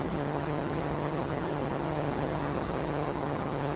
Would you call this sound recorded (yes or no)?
no